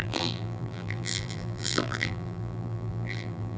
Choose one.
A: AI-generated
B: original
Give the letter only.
A